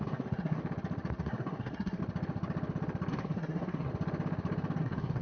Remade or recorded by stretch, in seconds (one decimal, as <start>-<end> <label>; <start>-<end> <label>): 0.0-0.6 remade; 0.6-1.2 recorded; 1.2-2.0 remade; 2.0-3.1 recorded; 3.1-3.9 remade; 3.9-4.8 recorded; 4.8-5.2 remade